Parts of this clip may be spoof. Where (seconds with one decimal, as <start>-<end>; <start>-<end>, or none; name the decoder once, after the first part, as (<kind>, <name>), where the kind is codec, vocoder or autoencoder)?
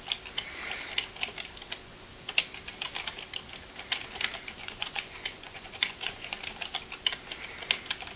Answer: 1.8-2.3 (vocoder, Vocos); 4.6-6.4